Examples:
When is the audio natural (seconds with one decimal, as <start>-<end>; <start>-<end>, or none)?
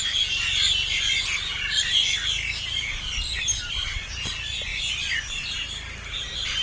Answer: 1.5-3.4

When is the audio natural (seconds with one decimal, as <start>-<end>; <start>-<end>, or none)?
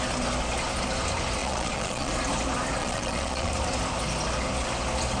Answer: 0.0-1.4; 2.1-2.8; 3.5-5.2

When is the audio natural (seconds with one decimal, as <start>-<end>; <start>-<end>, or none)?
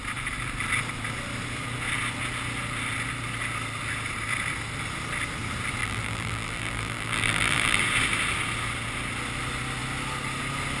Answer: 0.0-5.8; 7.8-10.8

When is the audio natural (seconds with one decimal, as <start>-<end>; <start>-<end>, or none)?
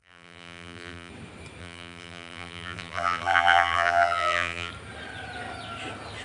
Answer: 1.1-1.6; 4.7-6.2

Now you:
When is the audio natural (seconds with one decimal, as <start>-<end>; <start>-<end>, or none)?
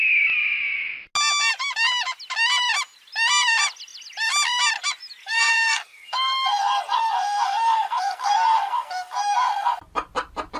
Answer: 0.0-5.2; 9.8-10.6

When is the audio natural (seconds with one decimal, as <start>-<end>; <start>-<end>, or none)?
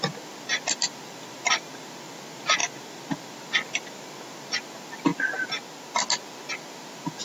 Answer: 0.0-7.2